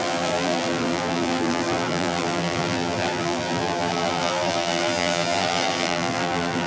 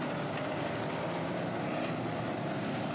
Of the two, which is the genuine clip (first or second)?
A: second